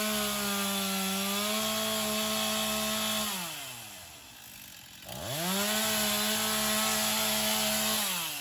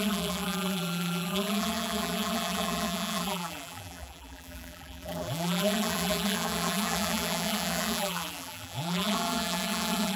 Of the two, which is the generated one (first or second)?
second